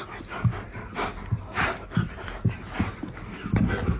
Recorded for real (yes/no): yes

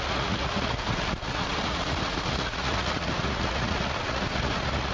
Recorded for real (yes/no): no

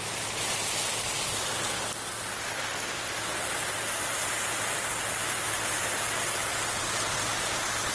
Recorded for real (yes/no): yes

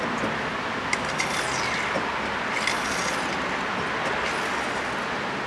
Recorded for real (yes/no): yes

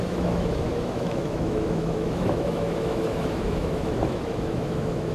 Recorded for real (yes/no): no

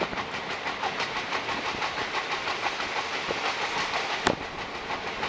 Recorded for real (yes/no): yes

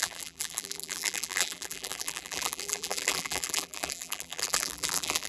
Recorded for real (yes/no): no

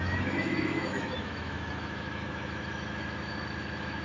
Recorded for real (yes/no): no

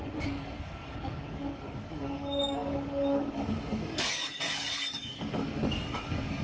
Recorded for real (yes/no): no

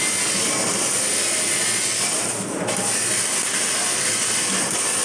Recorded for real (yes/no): yes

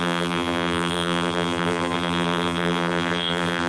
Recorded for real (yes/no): no